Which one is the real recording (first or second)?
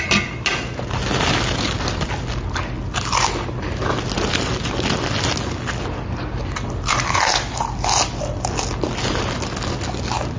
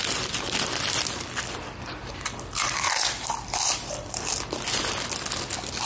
first